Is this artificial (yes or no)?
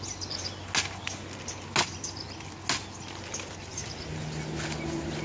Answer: no